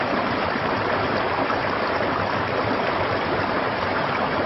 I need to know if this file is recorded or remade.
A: recorded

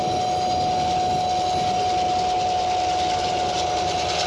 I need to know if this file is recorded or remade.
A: recorded